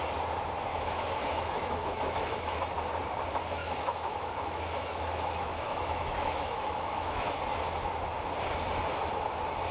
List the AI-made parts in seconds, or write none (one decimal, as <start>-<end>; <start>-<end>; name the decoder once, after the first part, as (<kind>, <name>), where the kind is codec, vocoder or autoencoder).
0.7-2.6 (autoencoder, DAC-VAE); 3.6-7.3